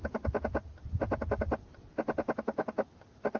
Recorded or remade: recorded